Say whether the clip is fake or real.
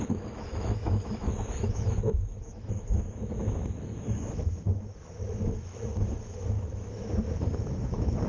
fake